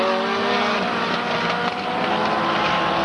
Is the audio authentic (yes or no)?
yes